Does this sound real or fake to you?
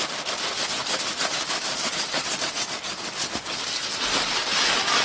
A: real